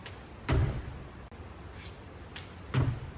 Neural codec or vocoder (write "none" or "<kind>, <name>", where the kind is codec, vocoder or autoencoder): none